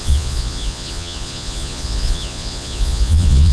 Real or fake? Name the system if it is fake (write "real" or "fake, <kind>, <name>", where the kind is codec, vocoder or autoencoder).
fake, vocoder, Vocos